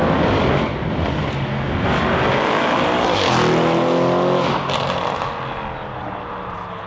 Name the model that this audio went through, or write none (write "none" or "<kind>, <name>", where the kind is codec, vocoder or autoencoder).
none